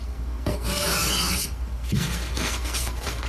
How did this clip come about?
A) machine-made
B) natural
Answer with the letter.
A